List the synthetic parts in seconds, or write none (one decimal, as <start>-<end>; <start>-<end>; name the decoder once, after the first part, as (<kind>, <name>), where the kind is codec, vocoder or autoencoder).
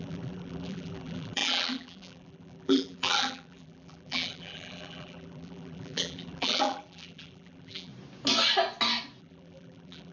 0.0-7.9 (vocoder, BigVGAN v2); 9.2-10.1